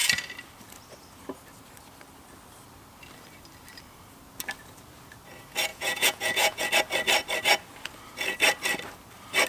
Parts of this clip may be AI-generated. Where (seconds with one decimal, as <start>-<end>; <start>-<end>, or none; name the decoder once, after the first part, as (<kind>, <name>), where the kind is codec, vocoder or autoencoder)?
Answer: 5.7-6.7 (vocoder, Vocos)